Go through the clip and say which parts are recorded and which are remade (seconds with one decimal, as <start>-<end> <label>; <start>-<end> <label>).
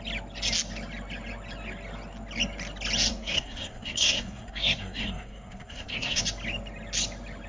0.0-3.1 recorded; 3.1-6.2 remade; 6.2-7.5 recorded